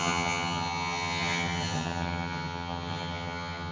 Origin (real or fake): fake